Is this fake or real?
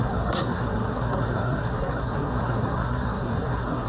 fake